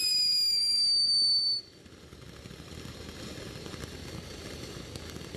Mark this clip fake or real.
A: real